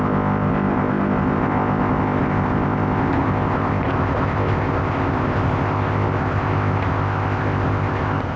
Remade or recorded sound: remade